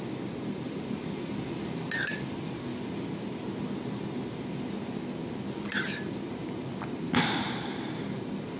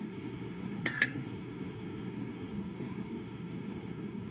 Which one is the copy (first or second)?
second